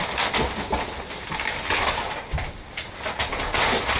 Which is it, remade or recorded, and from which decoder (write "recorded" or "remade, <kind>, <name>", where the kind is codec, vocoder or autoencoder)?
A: recorded